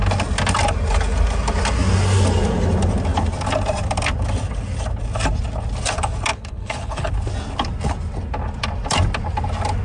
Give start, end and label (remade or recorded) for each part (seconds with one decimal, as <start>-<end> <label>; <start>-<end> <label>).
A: 0.0-6.3 recorded; 6.3-7.1 remade; 7.1-9.8 recorded